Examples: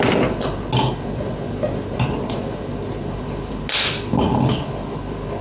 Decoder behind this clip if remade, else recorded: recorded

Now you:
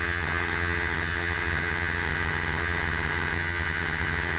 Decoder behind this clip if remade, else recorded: remade, vocoder, HiFi-GAN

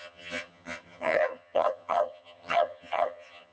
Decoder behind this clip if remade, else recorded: remade, vocoder, HiFi-GAN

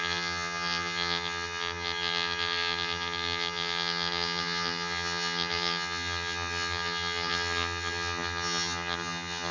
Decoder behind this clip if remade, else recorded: remade, vocoder, HiFi-GAN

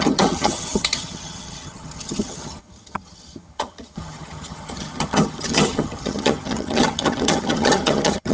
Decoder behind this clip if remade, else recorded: remade, vocoder, HiFi-GAN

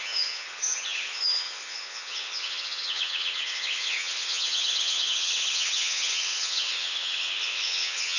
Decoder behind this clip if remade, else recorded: remade, vocoder, HiFi-GAN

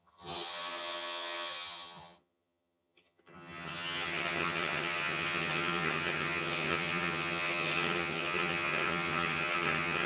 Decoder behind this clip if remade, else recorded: remade, vocoder, HiFi-GAN